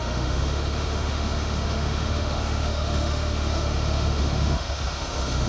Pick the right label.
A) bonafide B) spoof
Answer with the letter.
B